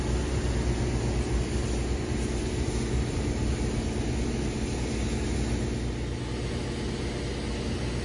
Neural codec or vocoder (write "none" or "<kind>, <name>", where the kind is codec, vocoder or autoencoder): none